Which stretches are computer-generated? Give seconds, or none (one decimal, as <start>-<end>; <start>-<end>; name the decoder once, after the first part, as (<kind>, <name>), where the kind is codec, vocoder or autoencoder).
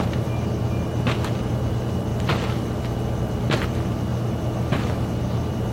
none